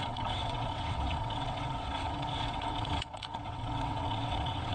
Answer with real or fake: fake